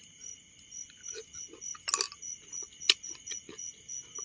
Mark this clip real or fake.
real